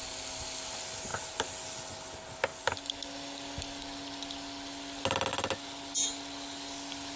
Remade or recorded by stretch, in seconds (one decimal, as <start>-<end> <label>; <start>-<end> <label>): 0.0-7.2 recorded